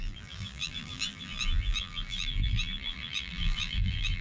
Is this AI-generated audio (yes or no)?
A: yes